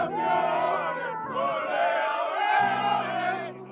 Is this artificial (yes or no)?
no